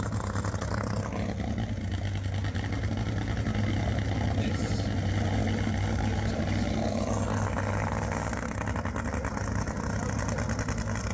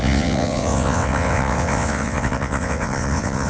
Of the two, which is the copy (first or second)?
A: second